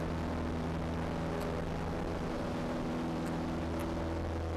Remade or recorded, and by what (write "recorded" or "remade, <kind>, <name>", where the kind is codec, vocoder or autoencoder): recorded